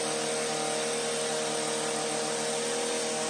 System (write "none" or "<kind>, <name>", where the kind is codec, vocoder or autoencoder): none